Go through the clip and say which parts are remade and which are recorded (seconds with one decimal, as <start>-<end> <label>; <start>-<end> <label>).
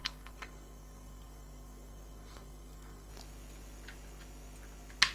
0.0-3.1 remade; 3.1-5.1 recorded